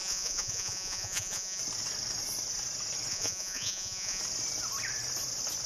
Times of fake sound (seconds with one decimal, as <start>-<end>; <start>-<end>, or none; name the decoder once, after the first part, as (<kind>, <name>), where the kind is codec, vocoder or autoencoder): 0.0-1.6 (vocoder, Vocos); 3.1-4.2